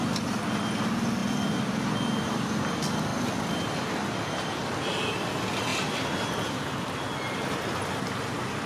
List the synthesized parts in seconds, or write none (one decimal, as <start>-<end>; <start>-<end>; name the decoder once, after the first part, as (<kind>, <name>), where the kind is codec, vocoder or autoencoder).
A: 5.7-6.4 (vocoder, BigVGAN v2)

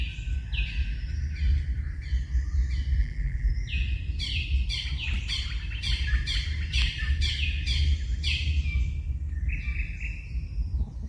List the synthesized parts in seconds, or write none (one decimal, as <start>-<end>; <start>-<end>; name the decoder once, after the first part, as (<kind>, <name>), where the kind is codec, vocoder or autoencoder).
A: 3.0-3.5 (vocoder, BigVGAN v2)